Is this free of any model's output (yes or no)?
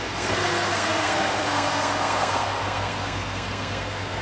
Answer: no